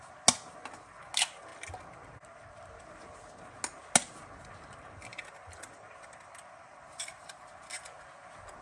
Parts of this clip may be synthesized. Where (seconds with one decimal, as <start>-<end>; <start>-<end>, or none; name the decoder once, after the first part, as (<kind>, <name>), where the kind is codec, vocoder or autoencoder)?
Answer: 5.1-7.5 (vocoder, BigVGAN v2)